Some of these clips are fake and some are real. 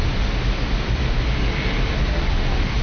real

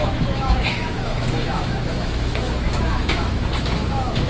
fake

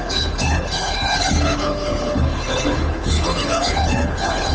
fake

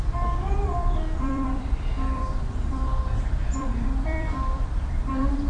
fake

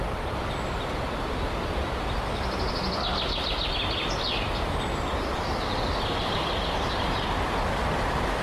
fake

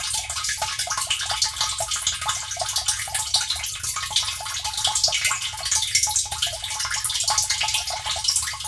real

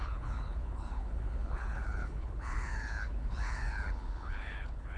fake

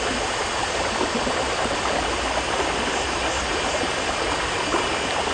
real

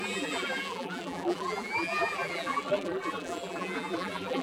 fake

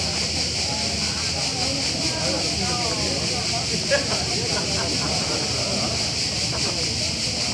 real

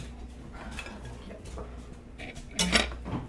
real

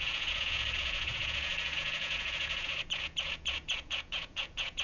fake